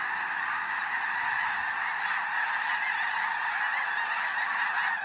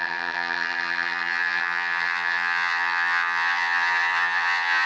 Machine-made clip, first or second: second